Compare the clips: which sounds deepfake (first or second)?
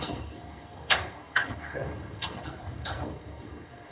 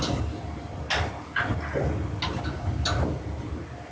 first